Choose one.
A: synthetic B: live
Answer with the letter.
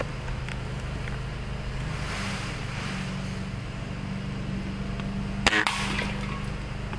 B